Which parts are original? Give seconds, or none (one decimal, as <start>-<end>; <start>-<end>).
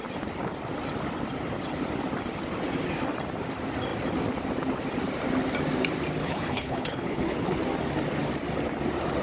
0.0-6.2; 7.6-9.2